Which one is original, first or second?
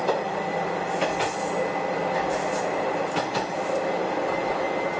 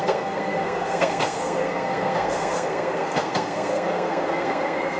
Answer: first